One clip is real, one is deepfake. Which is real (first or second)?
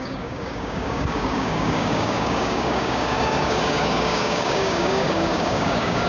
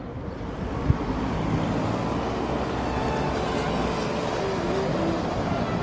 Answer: second